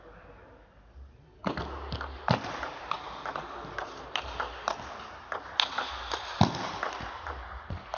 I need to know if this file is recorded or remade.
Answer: recorded